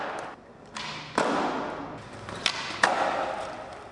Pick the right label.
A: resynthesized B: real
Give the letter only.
B